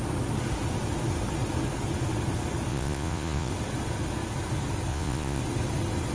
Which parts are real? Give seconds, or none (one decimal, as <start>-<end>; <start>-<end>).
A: 0.0-2.7; 3.5-4.9; 5.4-6.1